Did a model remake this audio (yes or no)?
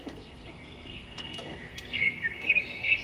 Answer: yes